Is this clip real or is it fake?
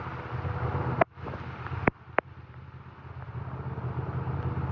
real